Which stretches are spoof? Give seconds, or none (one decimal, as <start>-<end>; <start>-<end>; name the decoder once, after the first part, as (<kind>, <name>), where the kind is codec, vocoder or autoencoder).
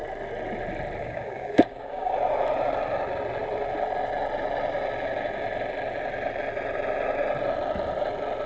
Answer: 1.0-2.1 (codec, DAC)